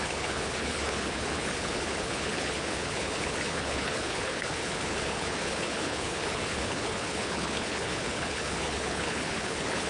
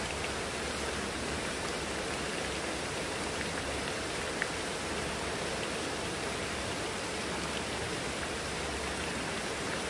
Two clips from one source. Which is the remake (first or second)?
first